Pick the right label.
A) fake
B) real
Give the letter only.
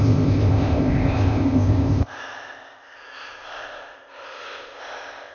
A